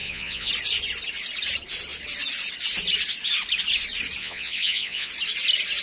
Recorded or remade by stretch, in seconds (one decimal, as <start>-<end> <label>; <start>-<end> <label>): 0.0-0.5 remade; 0.5-4.2 recorded; 4.2-5.1 remade; 5.1-5.8 recorded